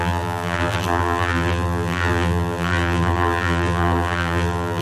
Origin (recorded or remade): remade